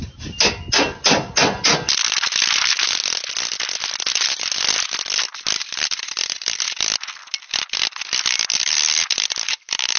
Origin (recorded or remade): recorded